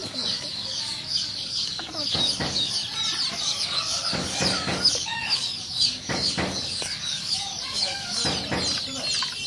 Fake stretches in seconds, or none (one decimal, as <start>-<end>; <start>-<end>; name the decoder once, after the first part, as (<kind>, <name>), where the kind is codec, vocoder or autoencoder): 0.0-2.8 (codec, DAC); 3.3-8.2